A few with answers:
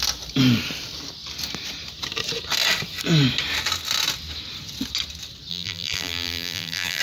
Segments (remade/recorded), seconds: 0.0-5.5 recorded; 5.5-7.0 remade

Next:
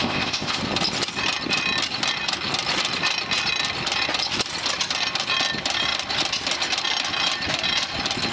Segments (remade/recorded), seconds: 0.0-0.6 remade; 0.6-8.3 recorded